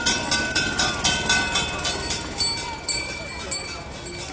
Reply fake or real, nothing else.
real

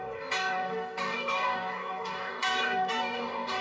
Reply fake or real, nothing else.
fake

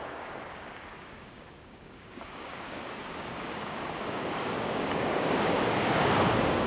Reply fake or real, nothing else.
fake